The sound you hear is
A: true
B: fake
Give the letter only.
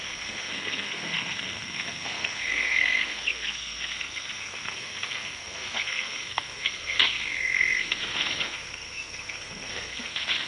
B